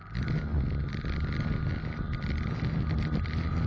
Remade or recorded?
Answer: recorded